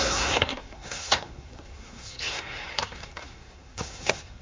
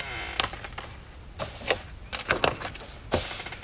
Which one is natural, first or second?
second